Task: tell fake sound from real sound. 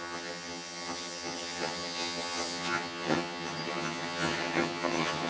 fake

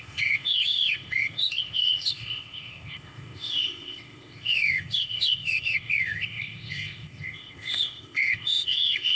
fake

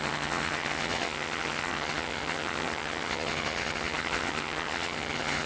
fake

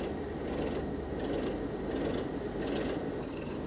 real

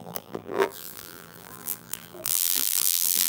fake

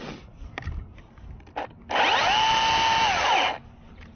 real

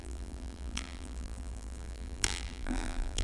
fake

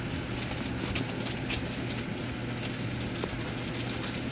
real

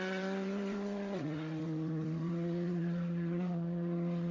fake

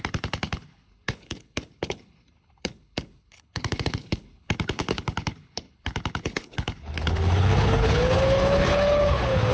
fake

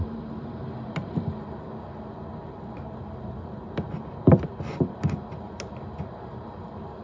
real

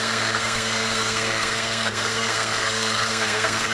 fake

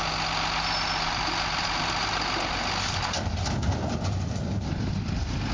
real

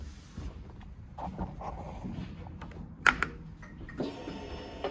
real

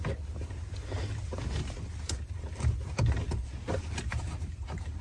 real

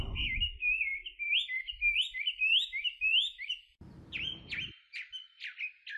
real